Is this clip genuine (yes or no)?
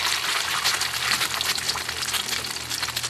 yes